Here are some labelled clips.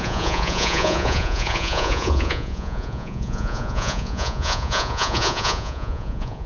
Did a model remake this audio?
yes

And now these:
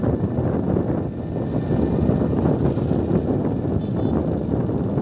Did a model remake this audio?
no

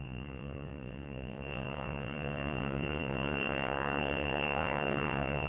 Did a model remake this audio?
yes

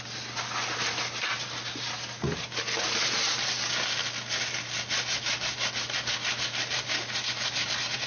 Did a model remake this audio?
no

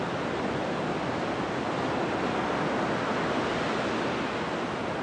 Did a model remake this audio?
no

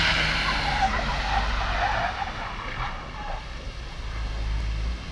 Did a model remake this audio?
no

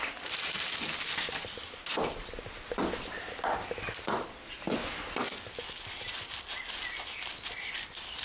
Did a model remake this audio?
no